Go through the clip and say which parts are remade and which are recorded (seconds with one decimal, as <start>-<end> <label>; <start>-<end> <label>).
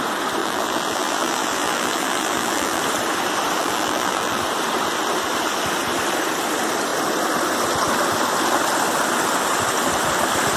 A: 0.0-0.4 recorded; 0.4-2.8 remade; 2.8-3.6 recorded; 3.6-4.4 remade; 4.4-10.6 recorded